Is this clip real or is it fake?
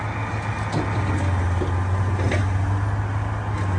real